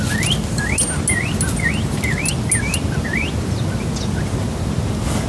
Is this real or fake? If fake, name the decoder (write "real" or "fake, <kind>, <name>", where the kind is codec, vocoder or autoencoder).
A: real